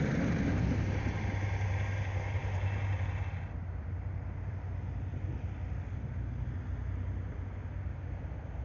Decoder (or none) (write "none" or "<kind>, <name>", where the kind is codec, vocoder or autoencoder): none